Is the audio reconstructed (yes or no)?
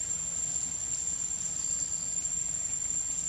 no